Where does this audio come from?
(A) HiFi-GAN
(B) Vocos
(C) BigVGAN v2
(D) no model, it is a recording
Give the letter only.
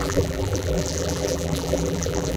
C